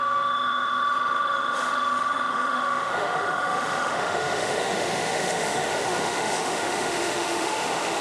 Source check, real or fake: fake